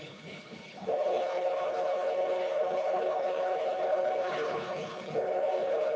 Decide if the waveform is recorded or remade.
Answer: remade